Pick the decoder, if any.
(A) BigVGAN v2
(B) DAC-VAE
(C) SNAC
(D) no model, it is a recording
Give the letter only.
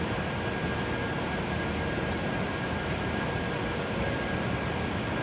D